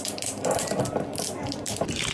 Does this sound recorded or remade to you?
recorded